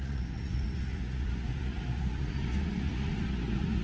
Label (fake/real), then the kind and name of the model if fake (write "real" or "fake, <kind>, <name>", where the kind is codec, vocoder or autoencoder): fake, vocoder, Vocos